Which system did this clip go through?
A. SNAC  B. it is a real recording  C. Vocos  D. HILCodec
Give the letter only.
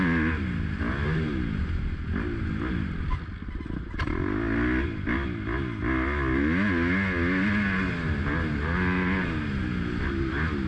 B